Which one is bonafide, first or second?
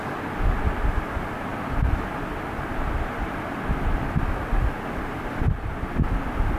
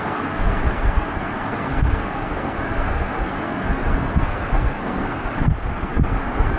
first